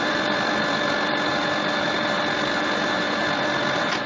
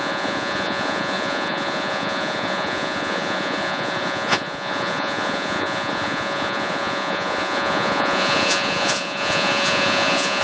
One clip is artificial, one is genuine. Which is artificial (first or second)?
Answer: second